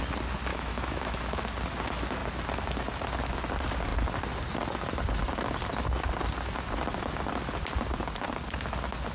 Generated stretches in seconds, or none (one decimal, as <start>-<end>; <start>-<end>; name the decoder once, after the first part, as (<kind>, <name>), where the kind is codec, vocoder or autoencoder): 0.5-1.2 (autoencoder, DAC-VAE)